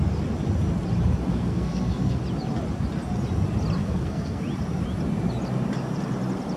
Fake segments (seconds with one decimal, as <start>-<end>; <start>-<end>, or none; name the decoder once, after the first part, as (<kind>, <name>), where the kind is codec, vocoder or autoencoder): 1.3-2.2 (codec, SNAC); 3.8-4.4